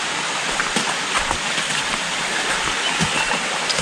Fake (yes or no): yes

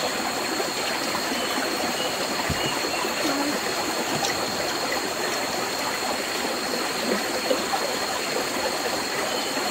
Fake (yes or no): no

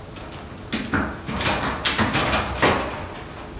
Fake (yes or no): no